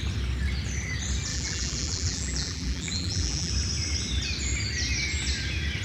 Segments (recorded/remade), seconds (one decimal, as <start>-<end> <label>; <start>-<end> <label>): 0.0-1.3 recorded; 1.3-3.5 remade; 3.5-5.8 recorded